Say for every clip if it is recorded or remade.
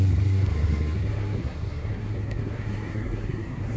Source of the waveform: remade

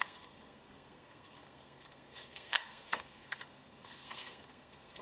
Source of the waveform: remade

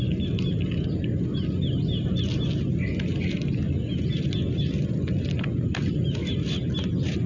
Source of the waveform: recorded